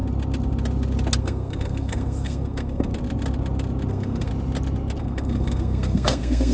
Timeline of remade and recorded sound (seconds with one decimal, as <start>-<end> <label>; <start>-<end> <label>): 0.0-1.2 recorded; 1.2-2.9 remade; 2.9-3.9 recorded; 3.9-4.3 remade; 4.3-5.0 recorded; 5.0-6.5 remade